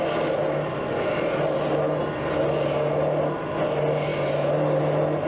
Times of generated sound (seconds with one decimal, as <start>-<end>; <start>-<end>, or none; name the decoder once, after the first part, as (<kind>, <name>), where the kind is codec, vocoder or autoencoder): none